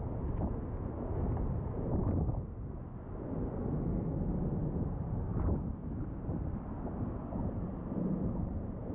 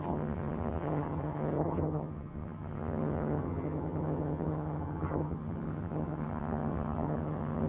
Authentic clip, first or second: first